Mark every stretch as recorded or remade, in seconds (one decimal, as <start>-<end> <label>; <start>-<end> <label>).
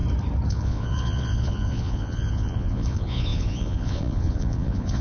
0.0-0.5 recorded; 0.5-5.0 remade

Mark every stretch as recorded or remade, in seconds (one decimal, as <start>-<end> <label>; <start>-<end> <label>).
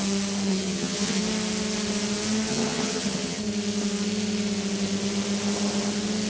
0.0-0.5 recorded; 0.5-1.2 remade; 1.2-2.5 recorded; 2.5-3.4 remade; 3.4-6.3 recorded